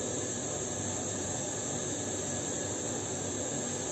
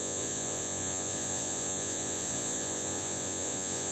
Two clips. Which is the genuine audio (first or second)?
first